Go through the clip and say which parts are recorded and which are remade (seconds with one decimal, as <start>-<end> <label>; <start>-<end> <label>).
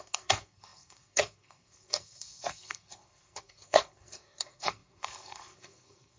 0.0-6.2 remade